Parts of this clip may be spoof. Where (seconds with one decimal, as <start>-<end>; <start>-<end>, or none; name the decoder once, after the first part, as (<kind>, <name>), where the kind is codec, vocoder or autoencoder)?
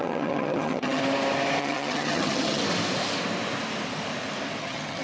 0.0-1.0 (vocoder, HiFi-GAN); 1.6-2.6; 4.6-5.0